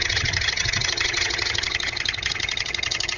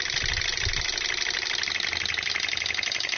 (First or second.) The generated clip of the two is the first